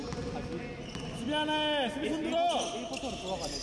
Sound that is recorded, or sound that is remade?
recorded